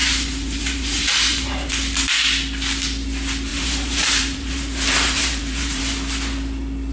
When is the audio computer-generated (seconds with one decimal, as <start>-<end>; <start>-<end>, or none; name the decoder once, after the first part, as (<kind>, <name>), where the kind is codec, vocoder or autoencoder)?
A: 0.0-1.7 (vocoder, BigVGAN v2); 3.5-5.8